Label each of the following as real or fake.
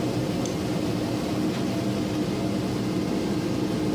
real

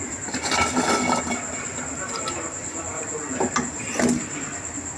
real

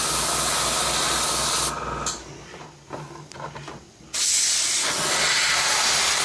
real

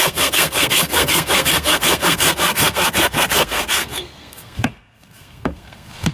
fake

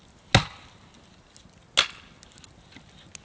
real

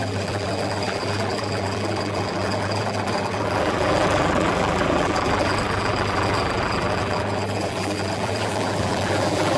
fake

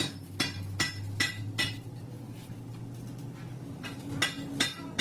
real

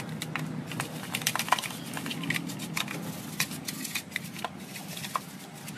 real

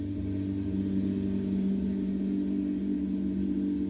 real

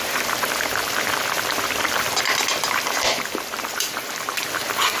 fake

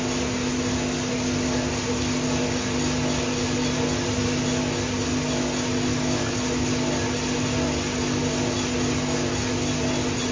real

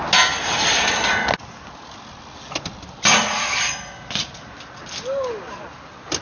real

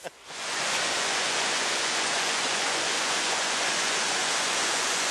fake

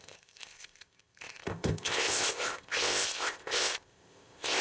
fake